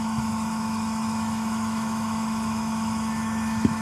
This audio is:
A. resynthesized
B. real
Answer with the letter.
A